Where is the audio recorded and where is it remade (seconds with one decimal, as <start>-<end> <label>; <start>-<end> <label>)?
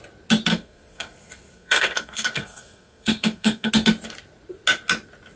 0.0-0.5 recorded; 0.5-3.7 remade; 3.7-5.4 recorded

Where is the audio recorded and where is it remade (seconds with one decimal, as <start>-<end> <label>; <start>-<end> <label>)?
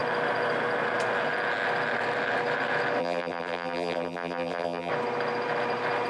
0.0-3.0 recorded; 3.0-4.9 remade; 4.9-6.1 recorded